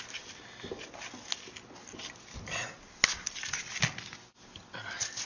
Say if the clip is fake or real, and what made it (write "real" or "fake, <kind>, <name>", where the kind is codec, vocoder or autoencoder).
real